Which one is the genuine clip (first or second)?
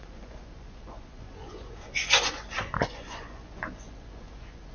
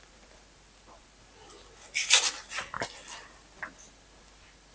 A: second